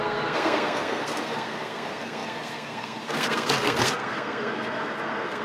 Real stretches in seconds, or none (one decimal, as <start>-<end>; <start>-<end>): none